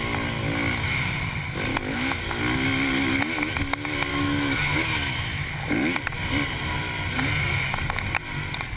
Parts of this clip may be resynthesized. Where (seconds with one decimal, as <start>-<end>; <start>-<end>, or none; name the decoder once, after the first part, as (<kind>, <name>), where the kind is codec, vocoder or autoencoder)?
1.7-2.2 (autoencoder, DAC-VAE); 4.1-5.5